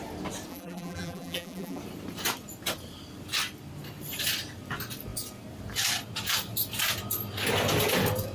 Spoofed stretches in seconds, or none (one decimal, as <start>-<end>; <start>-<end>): 0.5-1.8